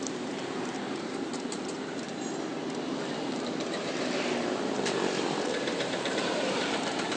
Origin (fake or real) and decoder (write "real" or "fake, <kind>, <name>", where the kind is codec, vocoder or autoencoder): fake, vocoder, BigVGAN v2